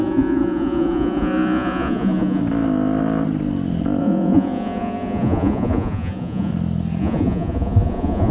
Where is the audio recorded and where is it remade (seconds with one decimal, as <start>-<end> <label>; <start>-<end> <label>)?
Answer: 0.0-2.4 remade; 2.4-4.0 recorded; 4.0-6.5 remade; 6.5-7.0 recorded; 7.0-8.3 remade